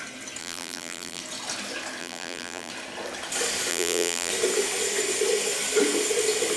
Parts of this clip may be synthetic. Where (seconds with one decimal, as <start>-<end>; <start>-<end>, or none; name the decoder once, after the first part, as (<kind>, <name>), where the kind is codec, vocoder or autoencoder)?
0.4-1.2 (vocoder, BigVGAN v2); 2.0-2.7; 3.7-4.3